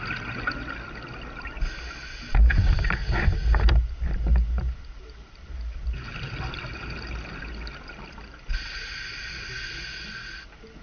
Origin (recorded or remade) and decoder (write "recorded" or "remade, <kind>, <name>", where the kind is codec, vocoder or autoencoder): recorded